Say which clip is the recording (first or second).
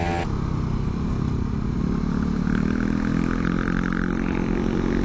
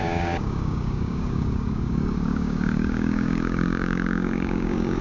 first